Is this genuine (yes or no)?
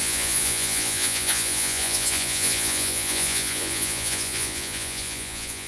no